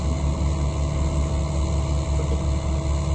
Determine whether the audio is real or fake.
real